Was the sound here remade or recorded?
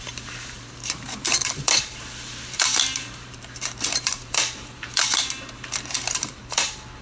remade